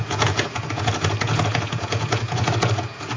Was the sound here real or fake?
fake